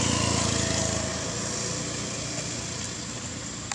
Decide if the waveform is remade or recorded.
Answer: recorded